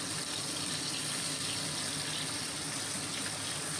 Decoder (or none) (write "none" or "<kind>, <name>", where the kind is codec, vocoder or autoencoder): none